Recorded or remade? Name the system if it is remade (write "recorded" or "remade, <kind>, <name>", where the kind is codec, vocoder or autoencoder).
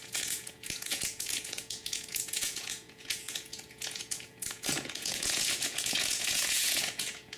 remade, vocoder, Vocos